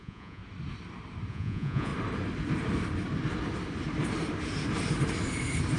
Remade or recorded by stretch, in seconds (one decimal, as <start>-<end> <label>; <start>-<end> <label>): 0.0-0.4 remade; 0.4-1.3 recorded; 1.3-1.9 remade; 1.9-5.8 recorded